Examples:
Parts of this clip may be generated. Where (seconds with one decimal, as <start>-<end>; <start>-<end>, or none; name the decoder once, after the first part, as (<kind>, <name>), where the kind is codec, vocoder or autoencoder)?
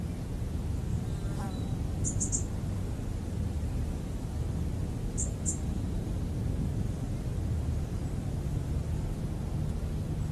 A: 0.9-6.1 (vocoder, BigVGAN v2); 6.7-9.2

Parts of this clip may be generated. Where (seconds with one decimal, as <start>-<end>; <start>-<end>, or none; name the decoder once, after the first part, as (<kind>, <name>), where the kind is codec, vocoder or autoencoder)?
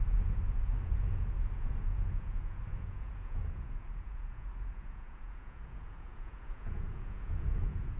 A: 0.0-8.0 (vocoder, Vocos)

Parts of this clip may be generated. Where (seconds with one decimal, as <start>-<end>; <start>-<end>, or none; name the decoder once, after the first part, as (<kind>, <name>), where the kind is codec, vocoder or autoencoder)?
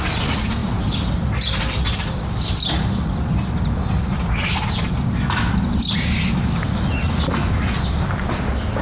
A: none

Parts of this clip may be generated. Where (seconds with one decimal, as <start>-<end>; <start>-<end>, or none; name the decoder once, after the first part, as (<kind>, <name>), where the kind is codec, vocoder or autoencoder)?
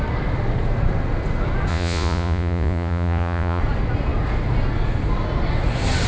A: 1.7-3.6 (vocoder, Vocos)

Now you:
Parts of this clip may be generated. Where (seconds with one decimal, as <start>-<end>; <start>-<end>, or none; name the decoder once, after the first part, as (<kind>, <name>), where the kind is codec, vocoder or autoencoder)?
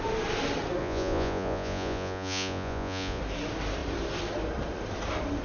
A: 0.8-3.2 (vocoder, Vocos)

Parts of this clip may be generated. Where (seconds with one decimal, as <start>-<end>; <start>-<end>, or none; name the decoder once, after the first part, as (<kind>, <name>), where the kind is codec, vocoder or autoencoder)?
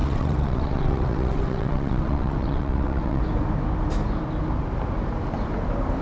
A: 0.0-3.2 (vocoder, WaveNeXt)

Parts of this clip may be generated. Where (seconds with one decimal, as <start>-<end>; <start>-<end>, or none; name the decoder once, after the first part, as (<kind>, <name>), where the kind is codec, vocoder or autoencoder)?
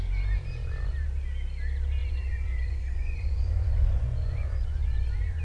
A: 2.0-5.4 (vocoder, Vocos)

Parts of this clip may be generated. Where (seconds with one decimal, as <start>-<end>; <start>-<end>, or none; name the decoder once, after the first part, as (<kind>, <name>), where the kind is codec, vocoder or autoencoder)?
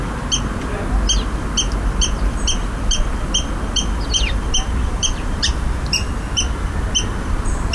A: 4.8-6.1 (vocoder, BigVGAN v2)